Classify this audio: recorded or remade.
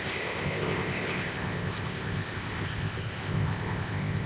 remade